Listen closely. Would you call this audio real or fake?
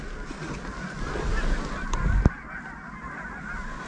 real